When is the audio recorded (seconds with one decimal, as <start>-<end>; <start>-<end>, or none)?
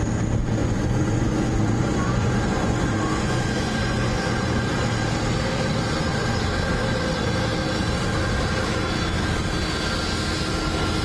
0.0-0.6; 4.7-11.0